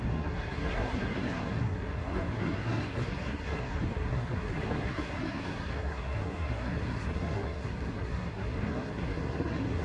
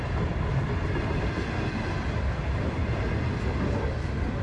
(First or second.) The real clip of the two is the second